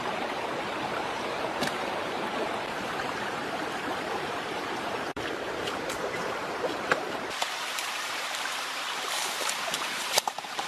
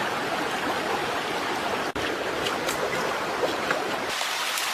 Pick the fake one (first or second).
first